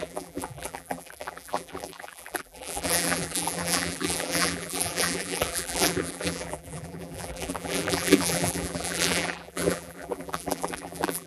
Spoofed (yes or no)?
yes